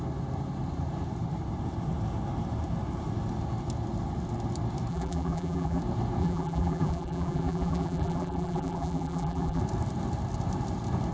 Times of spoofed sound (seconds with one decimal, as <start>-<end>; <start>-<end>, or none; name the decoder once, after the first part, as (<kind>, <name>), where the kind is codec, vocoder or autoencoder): 4.9-5.8 (vocoder, BigVGAN v2); 6.2-9.6